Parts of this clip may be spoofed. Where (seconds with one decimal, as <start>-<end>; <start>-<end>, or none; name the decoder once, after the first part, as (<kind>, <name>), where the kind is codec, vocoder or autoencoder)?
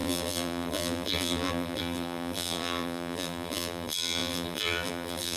0.0-5.4 (vocoder, BigVGAN v2)